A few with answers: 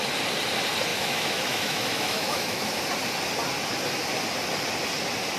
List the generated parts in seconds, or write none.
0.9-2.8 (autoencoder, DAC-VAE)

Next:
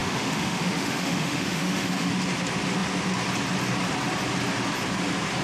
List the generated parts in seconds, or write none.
0.0-2.1 (autoencoder, DAC-VAE)

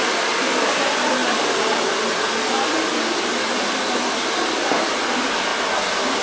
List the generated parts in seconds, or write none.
none

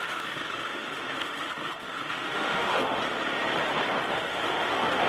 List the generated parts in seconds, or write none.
0.0-3.0 (autoencoder, DAC-VAE); 4.1-5.1